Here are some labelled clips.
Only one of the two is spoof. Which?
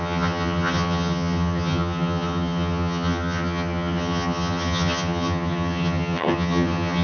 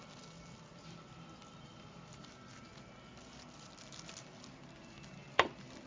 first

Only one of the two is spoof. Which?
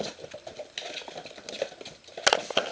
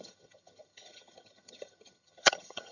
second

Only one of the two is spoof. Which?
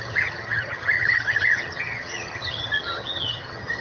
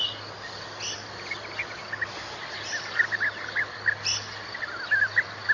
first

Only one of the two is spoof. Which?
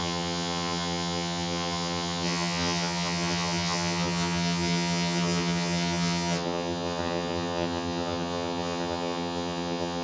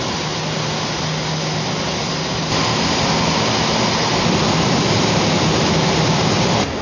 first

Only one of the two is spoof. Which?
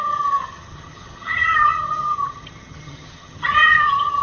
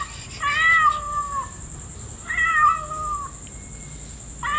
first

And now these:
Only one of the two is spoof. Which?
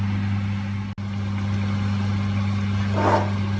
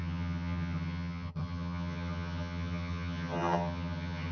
second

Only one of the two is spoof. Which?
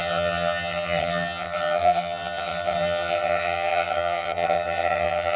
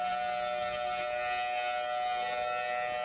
first